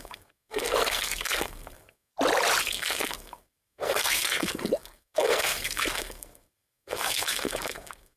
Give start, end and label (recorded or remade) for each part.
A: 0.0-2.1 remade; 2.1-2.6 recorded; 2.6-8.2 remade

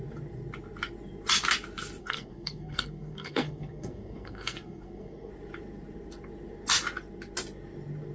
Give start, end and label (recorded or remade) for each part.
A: 0.0-2.0 recorded; 2.0-5.3 remade; 5.3-8.1 recorded

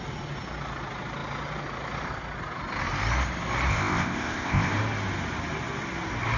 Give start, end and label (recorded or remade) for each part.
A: 0.0-3.7 recorded; 3.7-4.7 remade; 4.7-6.4 recorded

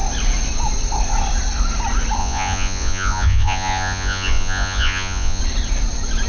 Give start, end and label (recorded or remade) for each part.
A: 0.0-2.2 recorded; 2.2-5.4 remade; 5.4-6.3 recorded

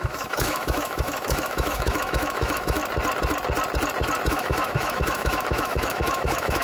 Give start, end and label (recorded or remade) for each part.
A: 0.0-2.8 remade; 2.8-4.3 recorded; 4.3-6.6 remade

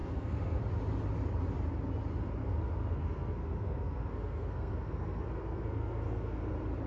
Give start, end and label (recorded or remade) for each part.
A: 0.0-0.6 remade; 0.6-2.4 recorded; 2.4-6.5 remade; 6.5-6.9 recorded

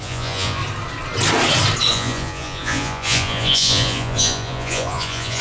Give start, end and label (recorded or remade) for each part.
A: 0.0-0.6 remade; 0.6-1.9 recorded; 1.9-5.4 remade

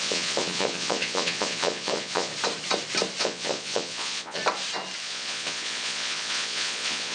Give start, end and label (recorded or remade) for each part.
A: 0.0-2.3 remade; 2.3-3.2 recorded; 3.2-4.4 remade; 4.4-5.0 recorded; 5.0-7.1 remade